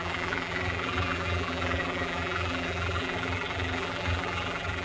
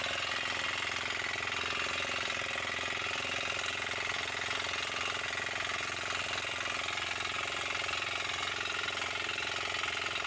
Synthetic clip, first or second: first